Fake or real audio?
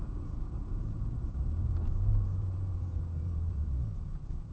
fake